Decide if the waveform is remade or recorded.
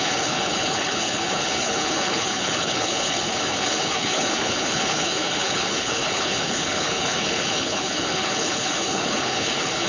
remade